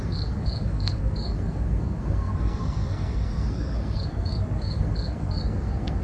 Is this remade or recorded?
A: remade